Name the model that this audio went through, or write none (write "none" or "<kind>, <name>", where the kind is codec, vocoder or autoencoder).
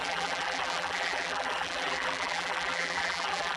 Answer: vocoder, BigVGAN v2